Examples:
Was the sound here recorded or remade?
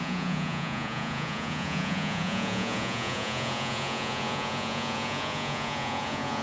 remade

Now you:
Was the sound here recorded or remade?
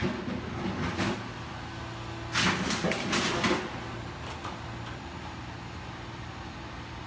recorded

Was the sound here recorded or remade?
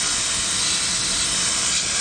recorded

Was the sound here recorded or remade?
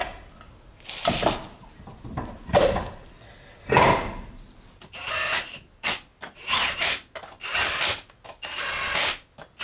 recorded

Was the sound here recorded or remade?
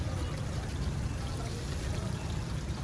recorded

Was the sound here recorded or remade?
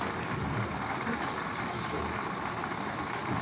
recorded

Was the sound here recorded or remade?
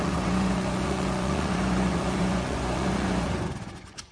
remade